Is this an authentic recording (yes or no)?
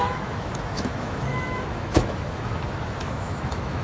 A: no